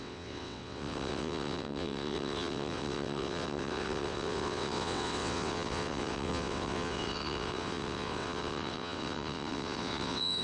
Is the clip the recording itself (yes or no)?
no